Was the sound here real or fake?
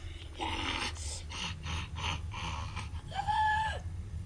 real